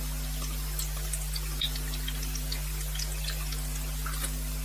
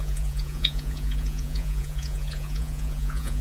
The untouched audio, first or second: first